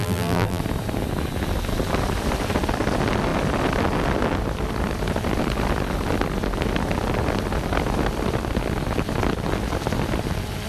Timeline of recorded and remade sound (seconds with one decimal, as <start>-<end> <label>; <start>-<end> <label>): 0.0-0.6 remade; 0.6-10.7 recorded